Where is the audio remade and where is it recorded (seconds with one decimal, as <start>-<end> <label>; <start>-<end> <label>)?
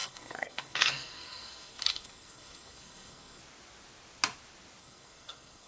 0.0-3.4 remade; 3.4-4.8 recorded; 4.8-5.7 remade